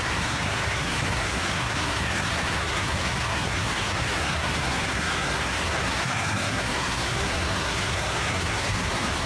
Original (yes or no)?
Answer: no